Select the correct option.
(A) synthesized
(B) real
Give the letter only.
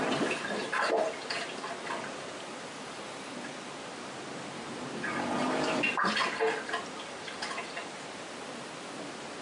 B